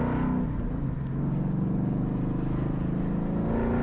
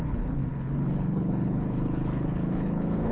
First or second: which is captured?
first